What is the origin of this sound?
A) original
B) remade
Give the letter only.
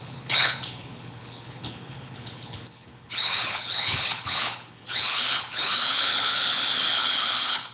B